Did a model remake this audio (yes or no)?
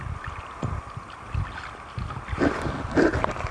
no